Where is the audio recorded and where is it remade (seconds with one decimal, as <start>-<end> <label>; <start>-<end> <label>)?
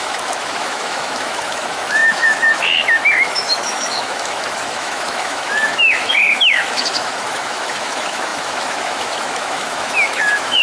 0.0-10.6 remade